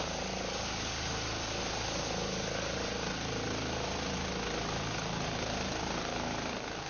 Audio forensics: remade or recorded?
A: recorded